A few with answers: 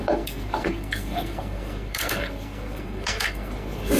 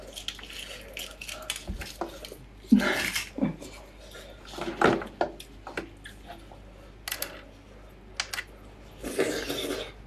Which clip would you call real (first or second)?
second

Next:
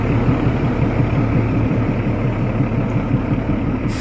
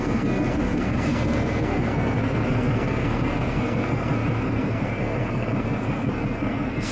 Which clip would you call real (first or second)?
first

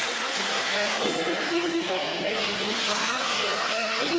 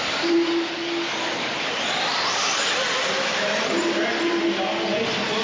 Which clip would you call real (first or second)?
second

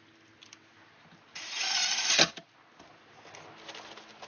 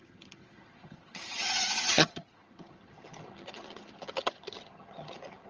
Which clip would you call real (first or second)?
first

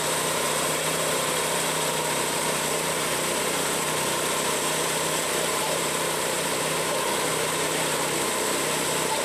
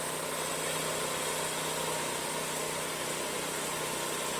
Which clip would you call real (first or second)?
second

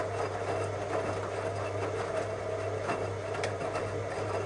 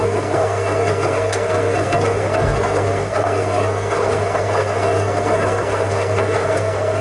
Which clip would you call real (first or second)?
first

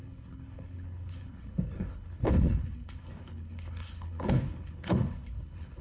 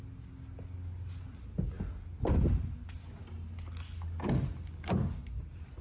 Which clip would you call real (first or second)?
second